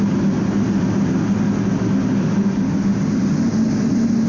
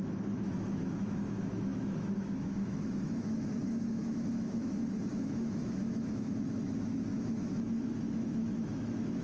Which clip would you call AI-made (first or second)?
second